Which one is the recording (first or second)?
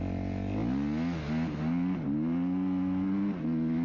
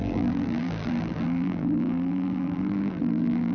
first